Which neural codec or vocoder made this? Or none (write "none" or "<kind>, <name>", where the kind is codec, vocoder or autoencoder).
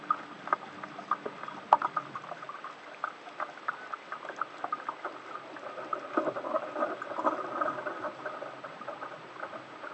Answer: none